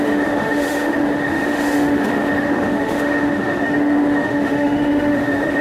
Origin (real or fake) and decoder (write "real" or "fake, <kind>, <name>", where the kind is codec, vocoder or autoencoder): fake, autoencoder, DAC-VAE